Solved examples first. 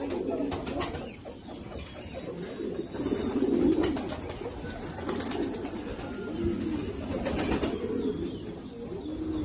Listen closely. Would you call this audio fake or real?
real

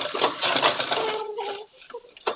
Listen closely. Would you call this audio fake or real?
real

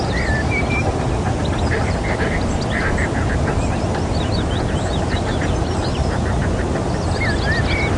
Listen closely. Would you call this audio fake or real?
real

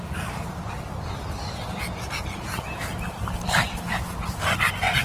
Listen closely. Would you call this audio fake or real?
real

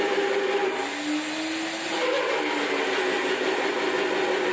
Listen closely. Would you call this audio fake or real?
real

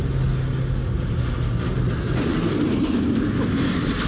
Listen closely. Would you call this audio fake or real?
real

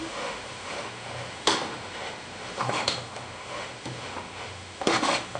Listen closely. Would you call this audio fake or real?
fake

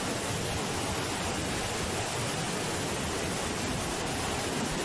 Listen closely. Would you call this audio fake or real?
real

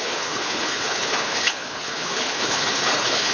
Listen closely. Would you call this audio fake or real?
fake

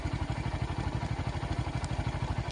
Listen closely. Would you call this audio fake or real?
real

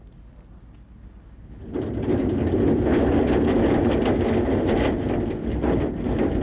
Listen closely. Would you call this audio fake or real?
real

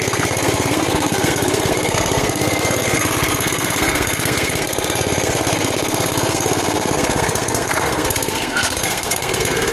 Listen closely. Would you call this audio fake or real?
fake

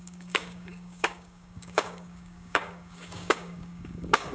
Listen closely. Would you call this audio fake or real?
fake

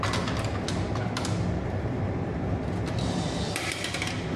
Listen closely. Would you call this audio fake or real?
real